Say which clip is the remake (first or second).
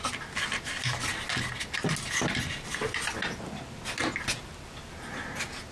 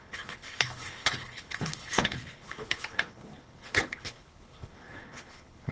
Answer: second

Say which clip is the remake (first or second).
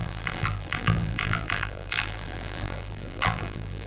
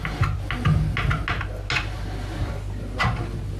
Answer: first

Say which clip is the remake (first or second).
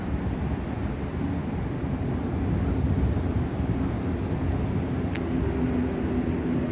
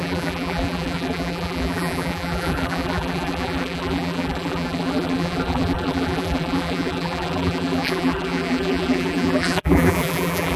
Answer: second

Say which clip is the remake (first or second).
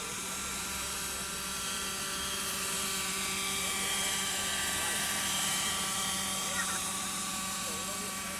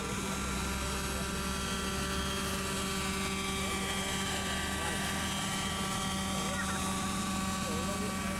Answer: first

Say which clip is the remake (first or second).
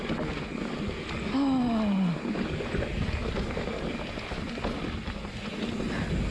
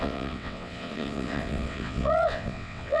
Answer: second